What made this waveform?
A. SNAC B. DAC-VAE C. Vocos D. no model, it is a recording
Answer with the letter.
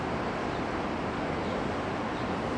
D